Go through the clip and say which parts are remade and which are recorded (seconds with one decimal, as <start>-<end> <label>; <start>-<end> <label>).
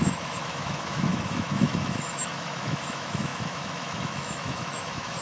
0.0-5.2 remade